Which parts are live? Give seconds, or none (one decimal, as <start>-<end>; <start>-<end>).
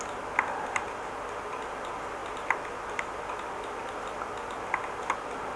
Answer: 0.0-5.6